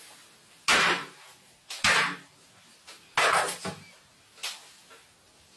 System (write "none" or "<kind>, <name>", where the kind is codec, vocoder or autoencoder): none